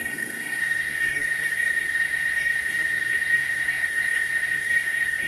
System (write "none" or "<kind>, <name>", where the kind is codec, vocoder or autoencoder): codec, SNAC